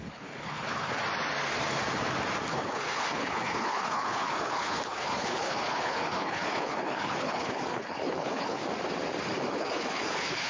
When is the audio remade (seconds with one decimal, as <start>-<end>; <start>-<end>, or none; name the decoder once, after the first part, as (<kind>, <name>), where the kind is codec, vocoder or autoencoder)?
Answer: 0.0-1.0 (codec, HILCodec); 2.5-8.6; 9.5-10.5